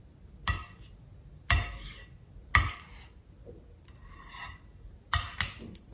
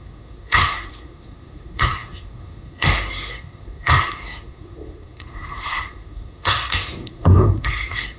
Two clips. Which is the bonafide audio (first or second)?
first